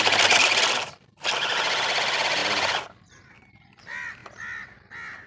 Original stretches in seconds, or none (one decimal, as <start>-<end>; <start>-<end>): none